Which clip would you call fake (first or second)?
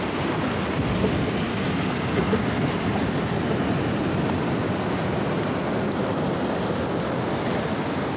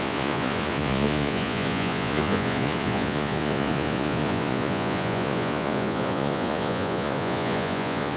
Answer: second